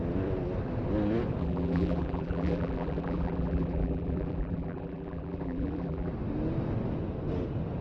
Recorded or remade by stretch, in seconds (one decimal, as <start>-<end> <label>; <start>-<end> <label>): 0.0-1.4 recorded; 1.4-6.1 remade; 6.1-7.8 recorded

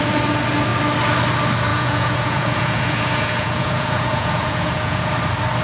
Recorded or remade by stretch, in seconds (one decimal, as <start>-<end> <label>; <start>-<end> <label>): 0.0-1.7 recorded; 1.7-5.1 remade; 5.1-5.6 recorded

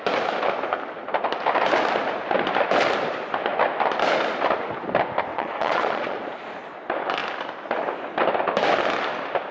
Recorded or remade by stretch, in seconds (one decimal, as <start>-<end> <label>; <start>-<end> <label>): 0.0-5.3 recorded; 5.3-6.3 remade; 6.3-9.5 recorded